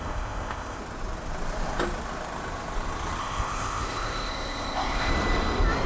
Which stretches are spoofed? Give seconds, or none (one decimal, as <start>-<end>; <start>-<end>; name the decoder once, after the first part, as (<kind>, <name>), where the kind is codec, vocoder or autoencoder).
0.0-0.8 (codec, ZipCodec); 3.2-5.1